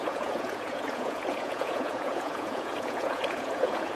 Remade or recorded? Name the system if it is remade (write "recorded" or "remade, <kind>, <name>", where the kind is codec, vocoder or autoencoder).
remade, vocoder, Vocos